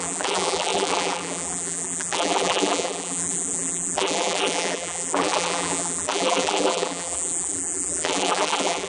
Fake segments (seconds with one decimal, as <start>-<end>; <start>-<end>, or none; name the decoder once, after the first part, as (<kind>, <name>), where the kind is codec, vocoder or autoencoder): 0.0-8.9 (vocoder, BigVGAN v2)